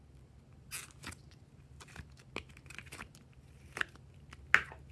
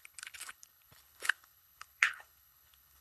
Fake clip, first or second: second